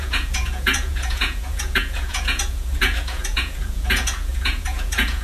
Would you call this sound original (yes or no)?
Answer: no